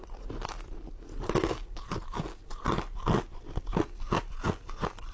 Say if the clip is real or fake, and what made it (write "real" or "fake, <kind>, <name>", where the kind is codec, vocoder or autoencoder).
real